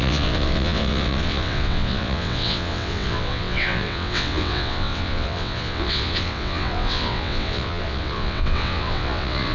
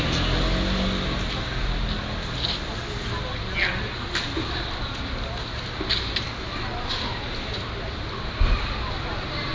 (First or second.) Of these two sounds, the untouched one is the second